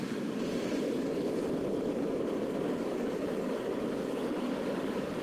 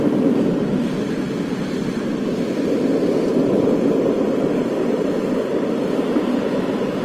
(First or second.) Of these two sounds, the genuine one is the second